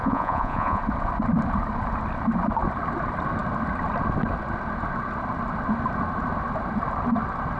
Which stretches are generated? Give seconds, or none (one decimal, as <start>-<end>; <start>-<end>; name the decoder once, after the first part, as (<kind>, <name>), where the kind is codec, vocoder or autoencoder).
0.0-0.8 (vocoder, Vocos)